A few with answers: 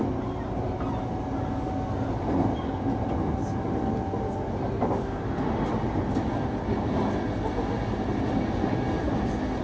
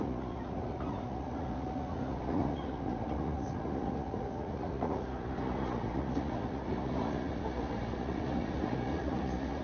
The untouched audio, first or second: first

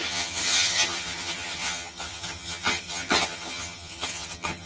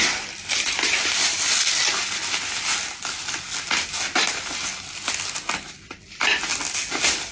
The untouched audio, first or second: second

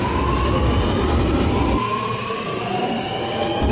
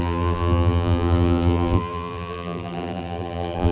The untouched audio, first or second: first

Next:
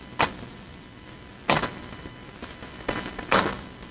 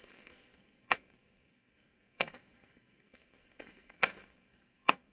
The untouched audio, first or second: first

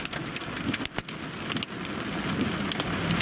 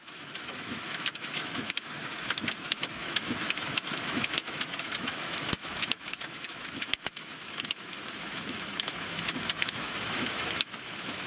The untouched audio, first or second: first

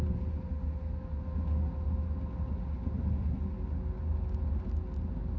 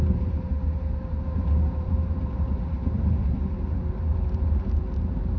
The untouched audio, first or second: first